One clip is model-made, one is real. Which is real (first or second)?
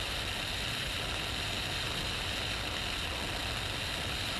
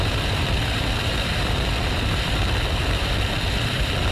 first